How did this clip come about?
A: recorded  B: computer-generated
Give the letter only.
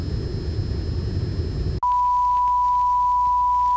A